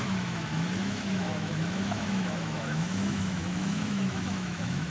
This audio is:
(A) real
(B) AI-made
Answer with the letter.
B